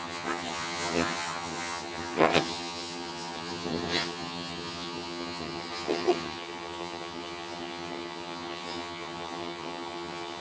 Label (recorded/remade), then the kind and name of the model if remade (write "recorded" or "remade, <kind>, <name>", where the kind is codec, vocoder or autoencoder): remade, vocoder, HiFi-GAN